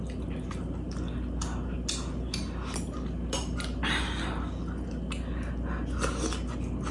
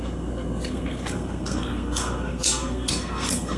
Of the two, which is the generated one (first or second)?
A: second